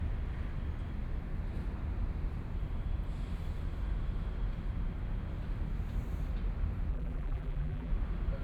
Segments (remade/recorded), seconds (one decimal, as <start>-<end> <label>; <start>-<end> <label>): 0.0-6.9 recorded; 6.9-7.9 remade; 7.9-8.4 recorded